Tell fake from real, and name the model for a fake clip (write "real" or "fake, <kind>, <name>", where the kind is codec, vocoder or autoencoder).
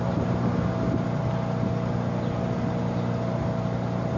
real